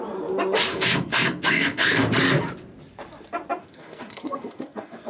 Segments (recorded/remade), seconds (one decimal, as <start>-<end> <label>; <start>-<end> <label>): 0.0-0.7 recorded; 0.7-2.0 remade; 2.0-3.6 recorded; 3.6-5.1 remade